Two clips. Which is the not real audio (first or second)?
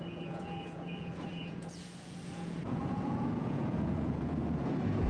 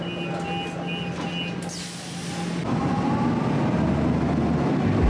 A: first